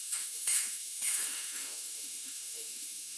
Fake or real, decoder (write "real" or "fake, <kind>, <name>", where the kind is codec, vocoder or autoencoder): fake, autoencoder, DAC-VAE